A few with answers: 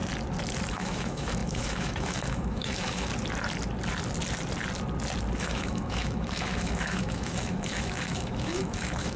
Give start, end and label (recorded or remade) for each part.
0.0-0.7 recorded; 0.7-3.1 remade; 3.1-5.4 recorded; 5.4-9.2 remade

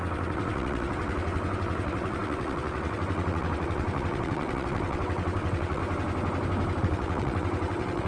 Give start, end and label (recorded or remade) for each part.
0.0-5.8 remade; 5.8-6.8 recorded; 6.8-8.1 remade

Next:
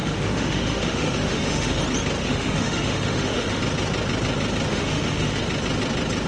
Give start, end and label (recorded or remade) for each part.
0.0-1.8 remade; 1.8-2.2 recorded; 2.2-3.6 remade; 3.6-4.7 recorded; 4.7-5.4 remade; 5.4-6.3 recorded